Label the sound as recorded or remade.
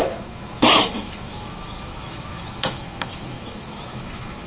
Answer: remade